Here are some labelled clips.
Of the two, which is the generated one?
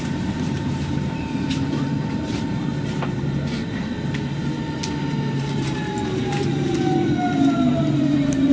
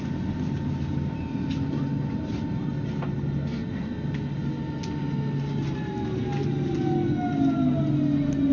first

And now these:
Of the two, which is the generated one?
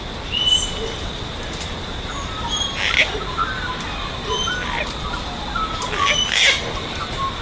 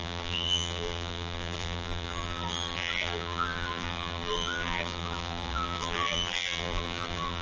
second